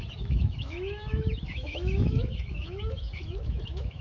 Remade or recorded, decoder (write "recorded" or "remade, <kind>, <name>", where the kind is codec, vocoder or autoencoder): remade, autoencoder, DAC-VAE